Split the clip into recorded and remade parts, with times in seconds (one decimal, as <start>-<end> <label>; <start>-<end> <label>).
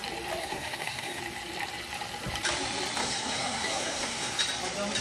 0.0-0.4 recorded; 0.4-1.2 remade; 1.2-3.0 recorded; 3.0-4.4 remade; 4.4-5.0 recorded